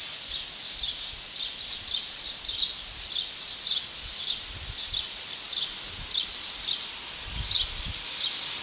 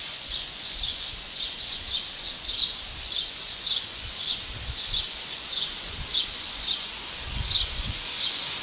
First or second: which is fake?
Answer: second